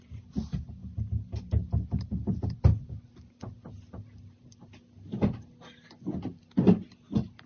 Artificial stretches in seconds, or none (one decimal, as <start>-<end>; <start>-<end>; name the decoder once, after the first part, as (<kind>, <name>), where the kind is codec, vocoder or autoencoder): none